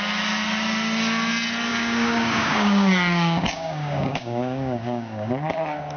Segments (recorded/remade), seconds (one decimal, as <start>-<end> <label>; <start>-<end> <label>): 0.0-1.7 recorded; 1.7-5.3 remade; 5.3-6.0 recorded